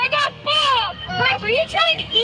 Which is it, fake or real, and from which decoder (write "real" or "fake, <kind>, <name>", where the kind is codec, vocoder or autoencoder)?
fake, codec, SNAC